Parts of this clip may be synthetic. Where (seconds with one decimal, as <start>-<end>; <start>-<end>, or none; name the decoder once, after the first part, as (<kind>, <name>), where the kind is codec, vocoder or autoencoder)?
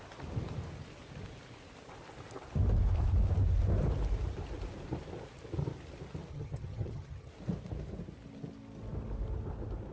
6.3-7.3 (vocoder, HiFi-GAN)